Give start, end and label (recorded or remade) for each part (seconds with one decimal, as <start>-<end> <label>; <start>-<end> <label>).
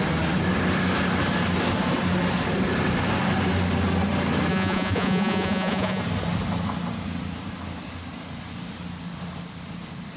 0.0-4.5 recorded; 4.5-6.0 remade; 6.0-10.2 recorded